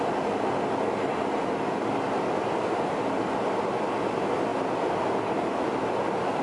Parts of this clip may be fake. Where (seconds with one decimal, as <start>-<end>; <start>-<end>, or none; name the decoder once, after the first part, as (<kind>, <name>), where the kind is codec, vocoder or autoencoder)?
none

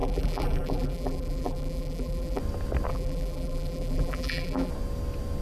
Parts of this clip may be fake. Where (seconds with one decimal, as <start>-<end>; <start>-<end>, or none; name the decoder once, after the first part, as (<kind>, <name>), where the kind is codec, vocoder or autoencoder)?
0.0-2.4 (vocoder, BigVGAN v2); 2.9-4.7

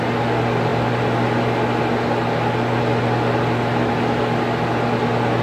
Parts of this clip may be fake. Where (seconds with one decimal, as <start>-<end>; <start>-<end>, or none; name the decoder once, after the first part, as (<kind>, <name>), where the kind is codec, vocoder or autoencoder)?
none

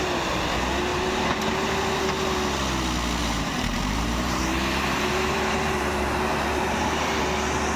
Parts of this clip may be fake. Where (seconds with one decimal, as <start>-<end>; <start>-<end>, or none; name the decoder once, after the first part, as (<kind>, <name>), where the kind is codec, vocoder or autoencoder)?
0.9-2.0 (vocoder, BigVGAN v2); 3.2-7.2